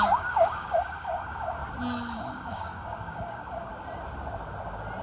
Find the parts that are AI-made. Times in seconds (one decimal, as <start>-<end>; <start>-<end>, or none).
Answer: 0.0-1.6; 2.3-3.7

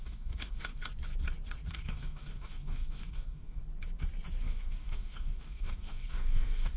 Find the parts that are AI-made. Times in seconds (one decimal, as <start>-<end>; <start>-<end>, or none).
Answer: 0.0-0.8; 1.7-3.6; 4.4-6.8

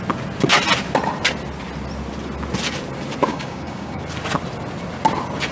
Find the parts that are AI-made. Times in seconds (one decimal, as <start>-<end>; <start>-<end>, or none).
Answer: 3.3-4.0

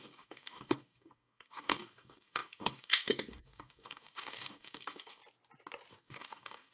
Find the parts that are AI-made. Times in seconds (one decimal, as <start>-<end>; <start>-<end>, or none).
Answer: 0.0-5.2; 5.9-6.7

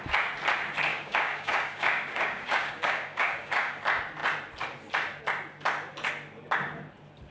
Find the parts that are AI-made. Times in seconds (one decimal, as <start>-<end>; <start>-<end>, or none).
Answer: 0.9-3.8